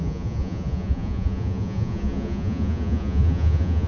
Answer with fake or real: fake